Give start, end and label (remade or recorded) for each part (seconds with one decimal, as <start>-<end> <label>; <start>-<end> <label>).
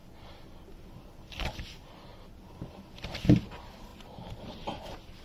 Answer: 0.0-1.0 recorded; 1.0-2.1 remade; 2.1-2.8 recorded; 2.8-5.2 remade